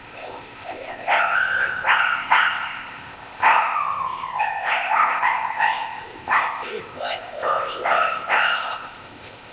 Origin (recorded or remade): remade